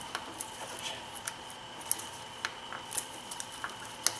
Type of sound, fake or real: real